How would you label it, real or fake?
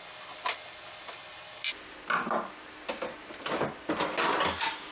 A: real